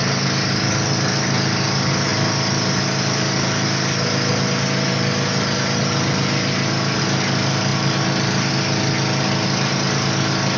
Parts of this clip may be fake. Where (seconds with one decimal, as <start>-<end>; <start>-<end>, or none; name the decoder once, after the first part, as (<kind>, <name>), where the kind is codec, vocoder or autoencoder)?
none